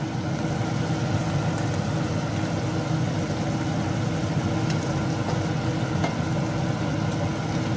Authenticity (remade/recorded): recorded